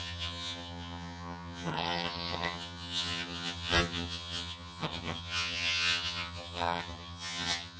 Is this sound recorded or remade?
remade